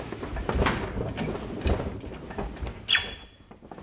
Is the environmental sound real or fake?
real